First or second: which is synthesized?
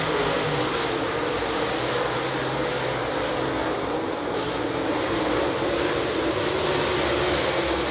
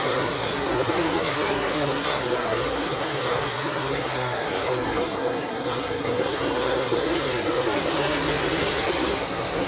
second